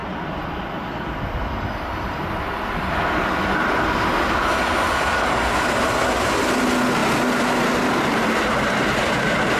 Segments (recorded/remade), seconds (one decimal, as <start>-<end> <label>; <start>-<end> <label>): 0.0-9.6 recorded